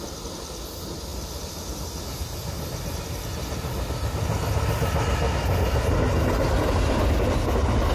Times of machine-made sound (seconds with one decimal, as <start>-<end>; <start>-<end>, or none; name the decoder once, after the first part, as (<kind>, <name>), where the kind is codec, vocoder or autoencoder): none